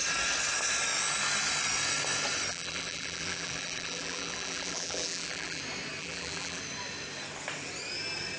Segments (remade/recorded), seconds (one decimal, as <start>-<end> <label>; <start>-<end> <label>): 0.0-2.5 recorded; 2.5-5.6 remade; 5.6-6.0 recorded; 6.0-6.6 remade; 6.6-8.4 recorded